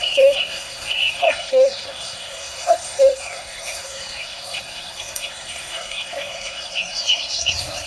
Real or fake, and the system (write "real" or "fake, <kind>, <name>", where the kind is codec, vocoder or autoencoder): fake, codec, SNAC